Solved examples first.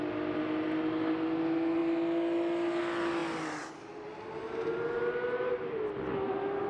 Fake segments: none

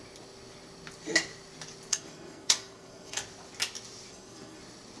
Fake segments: 1.9-3.2; 4.1-4.6

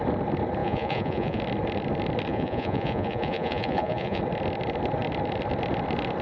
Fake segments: 0.6-1.4; 2.3-4.2